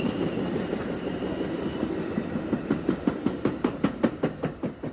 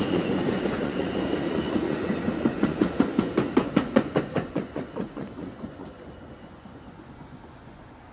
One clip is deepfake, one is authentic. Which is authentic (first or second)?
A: first